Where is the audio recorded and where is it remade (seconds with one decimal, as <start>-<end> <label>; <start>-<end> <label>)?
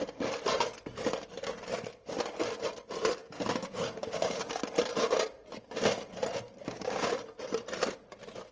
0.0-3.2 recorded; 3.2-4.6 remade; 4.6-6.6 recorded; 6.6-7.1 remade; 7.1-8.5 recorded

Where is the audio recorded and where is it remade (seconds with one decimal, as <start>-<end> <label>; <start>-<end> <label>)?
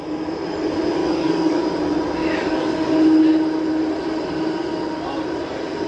0.0-1.0 recorded; 1.0-1.6 remade; 1.6-2.2 recorded; 2.2-2.9 remade; 2.9-5.9 recorded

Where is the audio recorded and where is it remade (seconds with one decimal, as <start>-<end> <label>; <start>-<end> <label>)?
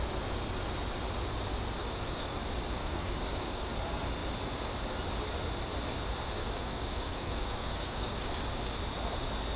0.0-1.8 recorded; 1.8-2.4 remade; 2.4-2.8 recorded; 2.8-3.7 remade; 3.7-6.4 recorded; 6.4-8.3 remade; 8.3-9.6 recorded